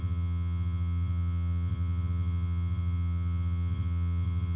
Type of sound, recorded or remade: remade